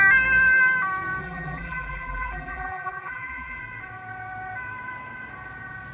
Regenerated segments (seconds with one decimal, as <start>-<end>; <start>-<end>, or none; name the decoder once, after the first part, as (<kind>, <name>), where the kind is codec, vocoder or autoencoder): 1.2-3.6 (vocoder, BigVGAN v2)